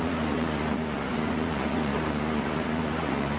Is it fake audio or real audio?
fake